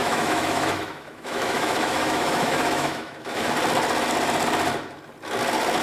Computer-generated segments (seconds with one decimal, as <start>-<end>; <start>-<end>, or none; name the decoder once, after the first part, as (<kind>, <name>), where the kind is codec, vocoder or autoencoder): 0.0-3.5 (autoencoder, DAC-VAE)